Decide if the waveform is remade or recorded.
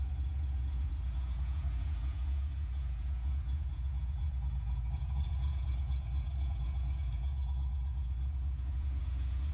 remade